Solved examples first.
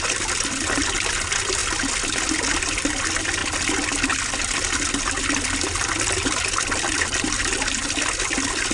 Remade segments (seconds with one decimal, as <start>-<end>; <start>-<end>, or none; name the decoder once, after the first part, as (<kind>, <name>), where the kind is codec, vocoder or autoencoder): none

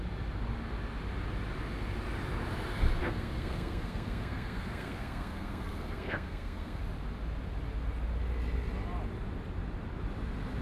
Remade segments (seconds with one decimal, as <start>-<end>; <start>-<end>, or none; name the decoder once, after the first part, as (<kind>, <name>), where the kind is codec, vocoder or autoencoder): 3.0-6.8 (codec, SNAC)

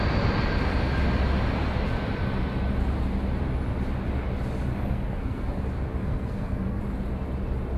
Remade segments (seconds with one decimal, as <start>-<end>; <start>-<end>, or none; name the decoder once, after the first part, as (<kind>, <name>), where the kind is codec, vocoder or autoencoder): 4.7-5.6 (codec, SNAC); 6.0-6.8